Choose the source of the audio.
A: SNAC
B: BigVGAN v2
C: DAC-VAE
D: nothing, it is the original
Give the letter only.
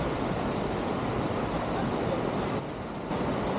D